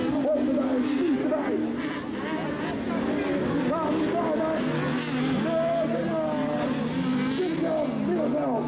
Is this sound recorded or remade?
recorded